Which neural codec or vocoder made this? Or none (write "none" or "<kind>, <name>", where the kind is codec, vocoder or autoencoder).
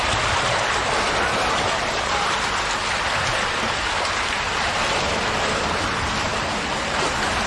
none